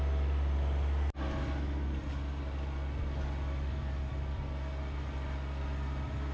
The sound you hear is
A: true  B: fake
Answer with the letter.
A